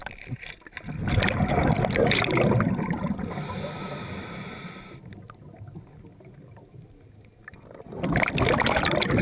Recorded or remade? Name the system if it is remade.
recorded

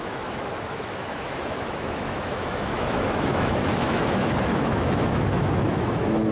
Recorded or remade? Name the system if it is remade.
remade, autoencoder, DAC-VAE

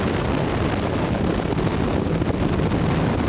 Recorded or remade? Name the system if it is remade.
recorded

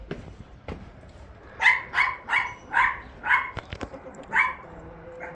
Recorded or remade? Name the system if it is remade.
remade, vocoder, BigVGAN v2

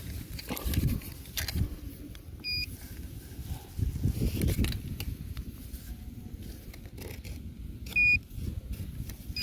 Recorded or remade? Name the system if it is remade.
recorded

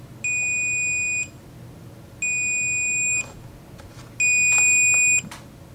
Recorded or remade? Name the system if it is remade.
recorded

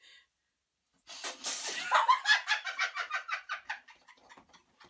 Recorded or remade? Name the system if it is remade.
recorded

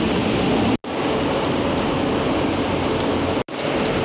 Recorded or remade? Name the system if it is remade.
recorded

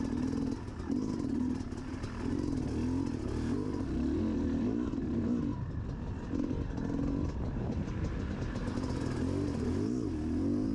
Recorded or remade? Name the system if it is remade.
recorded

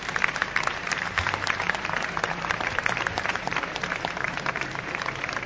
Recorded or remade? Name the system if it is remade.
remade, vocoder, BigVGAN v2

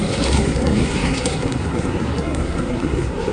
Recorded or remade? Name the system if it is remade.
remade, codec, SNAC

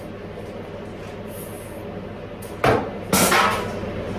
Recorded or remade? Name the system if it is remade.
recorded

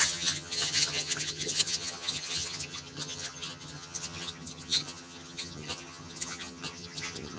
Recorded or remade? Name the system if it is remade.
remade, vocoder, HiFi-GAN